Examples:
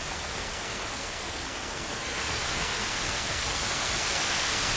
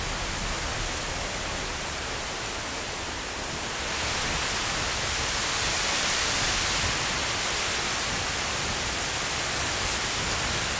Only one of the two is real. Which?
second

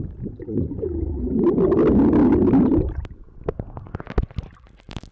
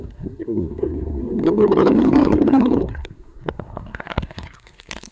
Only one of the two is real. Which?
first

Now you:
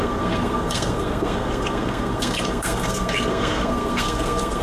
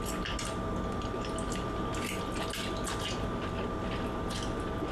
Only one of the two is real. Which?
second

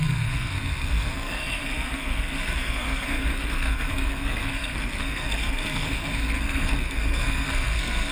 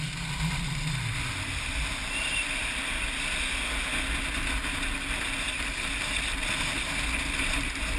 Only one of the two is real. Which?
second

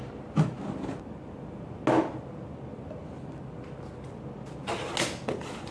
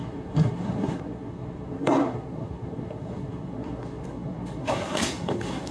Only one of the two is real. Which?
first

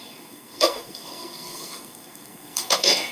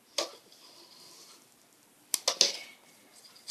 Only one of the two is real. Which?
second